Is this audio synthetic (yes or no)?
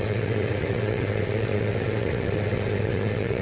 yes